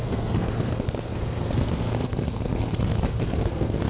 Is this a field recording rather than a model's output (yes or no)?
no